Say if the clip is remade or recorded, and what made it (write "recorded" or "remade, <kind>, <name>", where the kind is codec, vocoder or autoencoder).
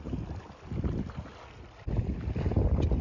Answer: recorded